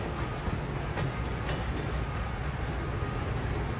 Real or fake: real